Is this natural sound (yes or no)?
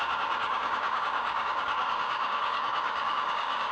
no